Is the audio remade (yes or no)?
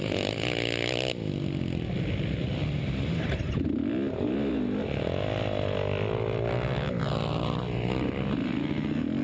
no